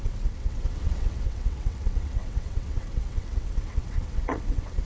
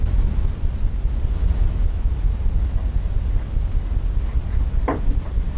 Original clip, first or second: second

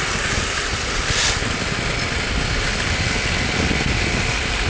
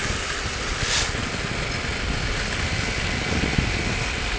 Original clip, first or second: second